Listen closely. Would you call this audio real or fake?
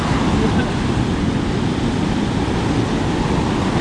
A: real